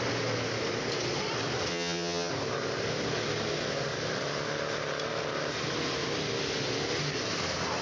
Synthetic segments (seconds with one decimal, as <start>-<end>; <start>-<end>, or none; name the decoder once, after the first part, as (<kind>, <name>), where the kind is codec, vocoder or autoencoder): 1.7-2.3 (vocoder, HiFi-GAN)